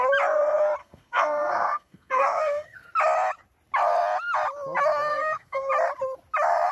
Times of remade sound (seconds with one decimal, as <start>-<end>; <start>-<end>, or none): 0.8-2.9; 5.1-5.7